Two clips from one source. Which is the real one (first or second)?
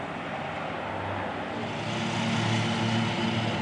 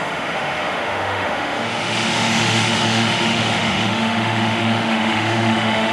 first